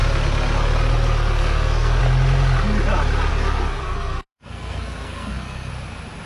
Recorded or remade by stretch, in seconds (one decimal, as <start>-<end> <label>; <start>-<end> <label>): 0.0-1.4 recorded; 1.4-2.0 remade; 2.0-3.3 recorded; 3.3-5.7 remade; 5.7-6.3 recorded